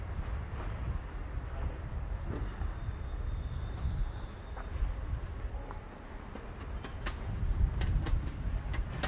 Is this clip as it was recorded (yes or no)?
yes